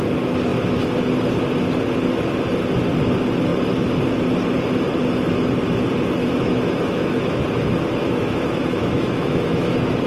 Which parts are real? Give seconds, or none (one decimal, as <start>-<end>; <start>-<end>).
0.0-6.2; 7.4-8.0; 9.7-10.1